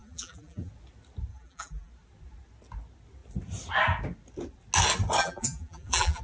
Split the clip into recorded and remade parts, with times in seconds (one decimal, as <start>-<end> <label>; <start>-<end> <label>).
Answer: 0.0-0.7 remade; 0.7-1.3 recorded; 1.3-1.9 remade; 1.9-5.2 recorded; 5.2-6.2 remade